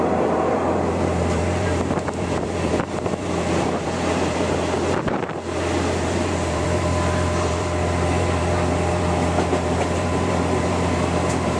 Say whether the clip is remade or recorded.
remade